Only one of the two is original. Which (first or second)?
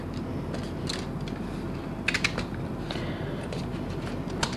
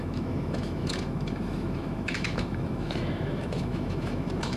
first